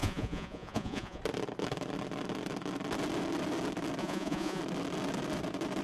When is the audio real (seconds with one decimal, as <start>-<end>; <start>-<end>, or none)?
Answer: 1.2-4.0; 4.6-5.8